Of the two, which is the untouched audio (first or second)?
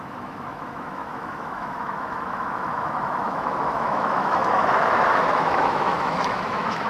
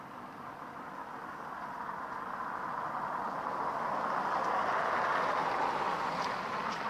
second